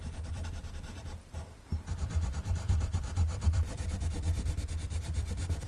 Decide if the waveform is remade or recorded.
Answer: remade